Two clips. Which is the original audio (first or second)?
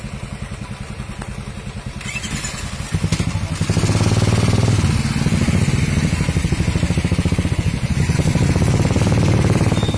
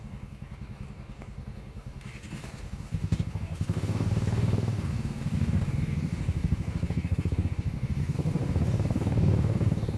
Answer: first